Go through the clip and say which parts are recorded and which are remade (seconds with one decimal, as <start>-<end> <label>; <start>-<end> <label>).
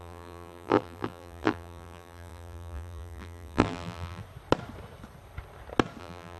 0.0-4.2 remade; 4.2-6.0 recorded; 6.0-6.4 remade